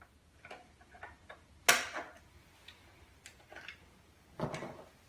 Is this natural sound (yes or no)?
yes